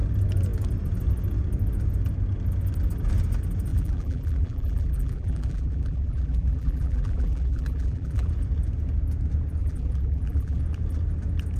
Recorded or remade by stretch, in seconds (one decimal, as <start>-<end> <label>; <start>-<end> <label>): 0.0-3.7 recorded; 3.7-8.3 remade; 8.3-9.6 recorded; 9.6-10.6 remade; 10.6-11.6 recorded